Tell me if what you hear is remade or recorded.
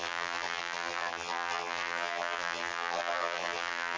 remade